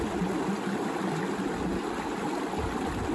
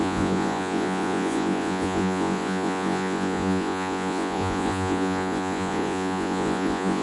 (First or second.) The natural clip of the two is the first